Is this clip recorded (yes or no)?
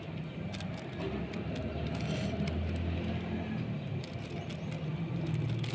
yes